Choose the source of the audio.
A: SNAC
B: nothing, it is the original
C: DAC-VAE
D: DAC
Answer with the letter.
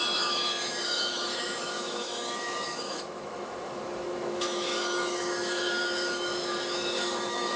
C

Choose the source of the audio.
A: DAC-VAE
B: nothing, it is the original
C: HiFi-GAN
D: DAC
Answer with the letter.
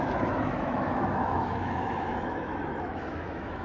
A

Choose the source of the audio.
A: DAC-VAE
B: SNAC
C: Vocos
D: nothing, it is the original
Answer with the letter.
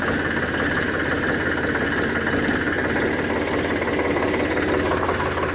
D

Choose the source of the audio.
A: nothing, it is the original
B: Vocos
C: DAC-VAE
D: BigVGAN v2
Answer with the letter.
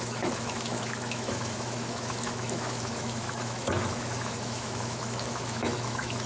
C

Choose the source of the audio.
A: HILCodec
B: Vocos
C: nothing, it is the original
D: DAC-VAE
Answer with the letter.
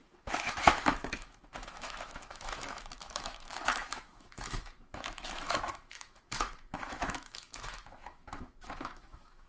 D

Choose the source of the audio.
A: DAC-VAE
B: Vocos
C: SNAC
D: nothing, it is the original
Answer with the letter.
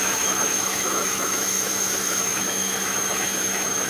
A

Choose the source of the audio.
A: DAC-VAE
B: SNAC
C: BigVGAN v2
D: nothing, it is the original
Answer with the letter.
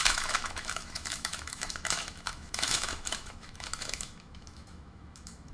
A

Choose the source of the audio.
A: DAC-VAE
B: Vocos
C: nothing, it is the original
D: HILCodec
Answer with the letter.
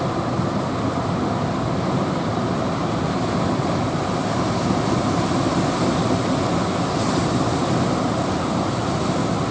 C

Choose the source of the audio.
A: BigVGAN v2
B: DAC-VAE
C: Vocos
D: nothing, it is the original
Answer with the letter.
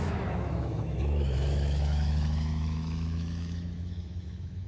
B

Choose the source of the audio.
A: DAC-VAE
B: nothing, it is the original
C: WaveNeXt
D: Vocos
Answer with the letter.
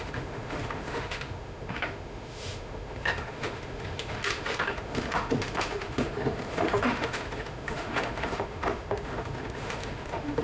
A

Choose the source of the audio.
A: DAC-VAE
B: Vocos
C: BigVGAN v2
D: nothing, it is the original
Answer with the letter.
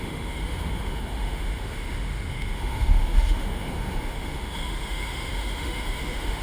A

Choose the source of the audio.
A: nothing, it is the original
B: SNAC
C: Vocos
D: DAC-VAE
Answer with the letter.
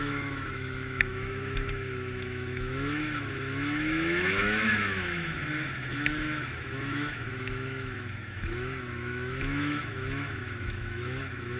D